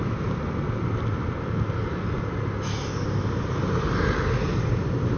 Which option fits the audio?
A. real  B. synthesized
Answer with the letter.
A